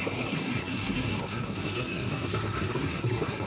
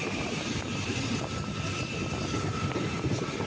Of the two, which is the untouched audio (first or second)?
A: second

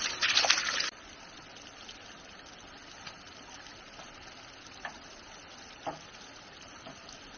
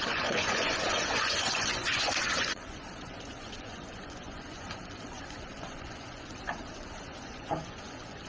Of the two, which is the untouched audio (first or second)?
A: first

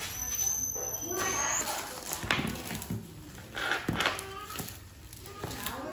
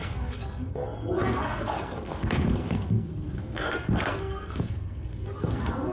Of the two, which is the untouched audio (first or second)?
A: first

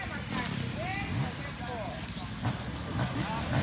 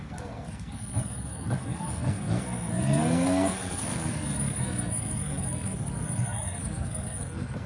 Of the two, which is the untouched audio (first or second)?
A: first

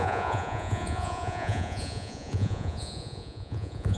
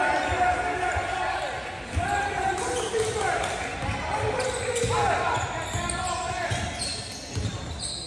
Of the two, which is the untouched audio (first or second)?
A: second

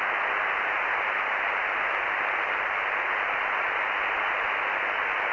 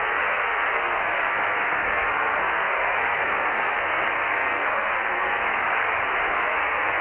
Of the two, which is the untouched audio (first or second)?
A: first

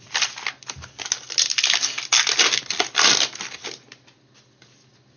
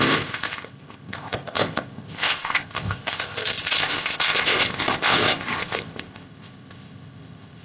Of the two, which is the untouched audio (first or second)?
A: first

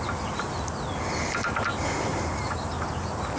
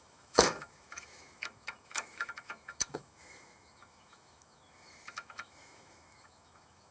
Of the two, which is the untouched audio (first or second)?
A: first